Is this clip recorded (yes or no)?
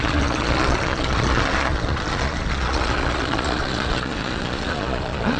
no